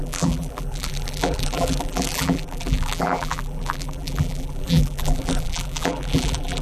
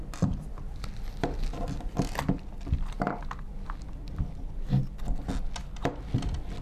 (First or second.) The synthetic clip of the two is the first